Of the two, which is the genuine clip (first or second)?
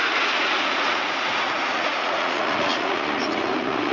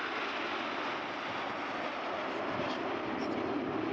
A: second